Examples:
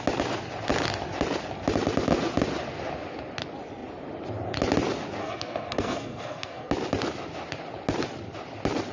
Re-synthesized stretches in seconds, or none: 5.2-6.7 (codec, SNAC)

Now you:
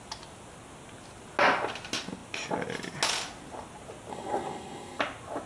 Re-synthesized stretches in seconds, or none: 4.1-5.0 (codec, SNAC)

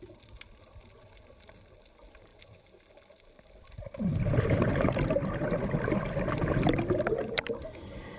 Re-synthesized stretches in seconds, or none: none

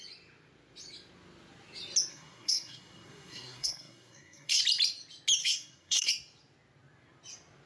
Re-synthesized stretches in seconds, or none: 2.1-4.6 (codec, SNAC); 5.4-6.1